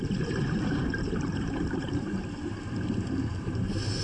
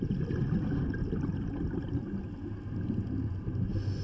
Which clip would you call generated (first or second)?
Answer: first